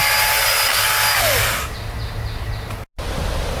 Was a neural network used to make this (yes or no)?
no